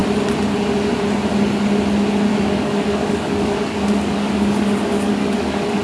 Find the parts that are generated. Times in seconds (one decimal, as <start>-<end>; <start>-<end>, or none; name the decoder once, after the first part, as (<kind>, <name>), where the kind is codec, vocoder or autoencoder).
2.3-5.8 (codec, DAC)

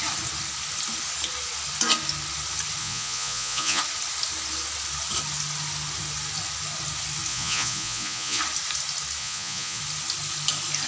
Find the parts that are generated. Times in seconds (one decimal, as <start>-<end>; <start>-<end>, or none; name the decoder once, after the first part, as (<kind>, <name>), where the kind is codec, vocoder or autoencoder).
2.8-3.8 (vocoder, Vocos); 7.3-8.4; 9.2-9.8